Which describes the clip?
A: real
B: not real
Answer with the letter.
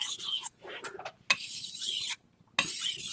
A